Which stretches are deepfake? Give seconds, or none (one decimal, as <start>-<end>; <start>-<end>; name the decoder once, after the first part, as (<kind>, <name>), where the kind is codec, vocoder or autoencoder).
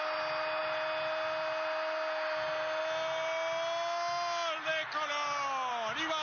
none